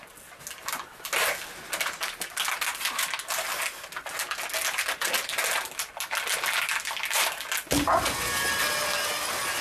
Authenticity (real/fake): real